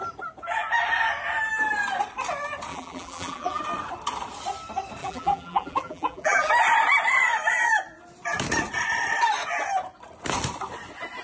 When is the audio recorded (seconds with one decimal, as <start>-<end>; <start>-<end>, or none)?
0.0-2.7; 3.6-5.0; 6.5-11.2

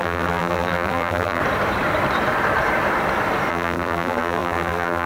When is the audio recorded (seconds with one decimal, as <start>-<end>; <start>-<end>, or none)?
1.4-3.5

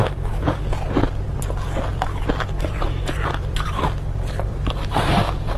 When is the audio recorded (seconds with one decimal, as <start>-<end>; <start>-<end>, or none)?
0.6-1.9; 4.6-5.6

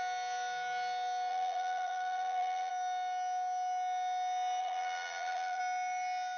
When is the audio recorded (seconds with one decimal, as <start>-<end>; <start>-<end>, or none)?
0.0-1.3; 2.7-4.6; 5.6-6.4

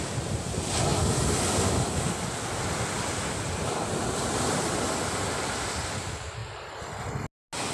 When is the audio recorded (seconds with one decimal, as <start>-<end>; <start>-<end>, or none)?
0.0-7.7

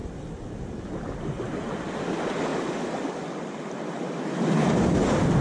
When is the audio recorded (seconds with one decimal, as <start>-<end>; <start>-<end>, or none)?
0.8-5.4